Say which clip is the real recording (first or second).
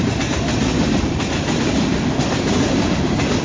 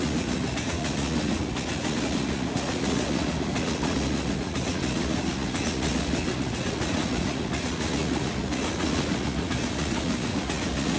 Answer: first